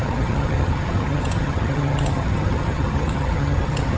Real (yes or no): no